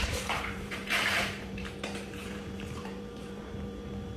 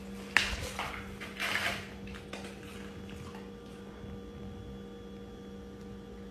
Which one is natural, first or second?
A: second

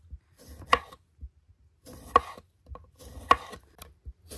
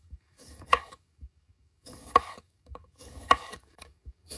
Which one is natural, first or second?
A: first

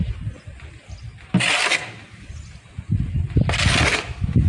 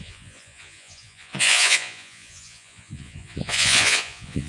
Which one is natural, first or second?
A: first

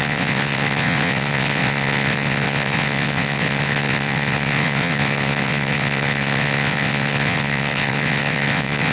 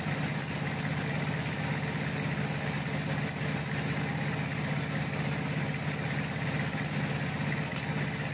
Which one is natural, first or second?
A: second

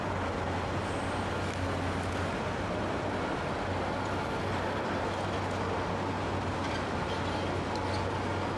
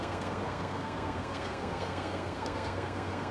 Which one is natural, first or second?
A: first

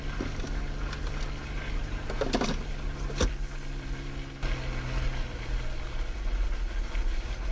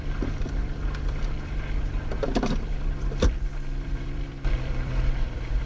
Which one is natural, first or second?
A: first